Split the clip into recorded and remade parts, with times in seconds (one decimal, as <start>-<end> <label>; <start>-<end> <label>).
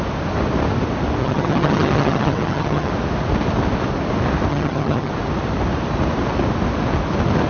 0.0-1.2 recorded; 1.2-2.9 remade; 2.9-4.5 recorded; 4.5-5.1 remade; 5.1-7.5 recorded